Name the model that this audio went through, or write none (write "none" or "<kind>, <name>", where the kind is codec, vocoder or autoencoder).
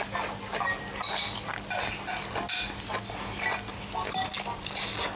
none